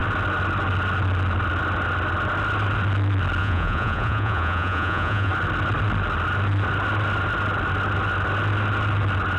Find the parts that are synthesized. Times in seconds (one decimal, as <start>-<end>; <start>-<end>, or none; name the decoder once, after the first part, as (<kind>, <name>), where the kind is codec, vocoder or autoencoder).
3.4-5.3 (vocoder, Vocos)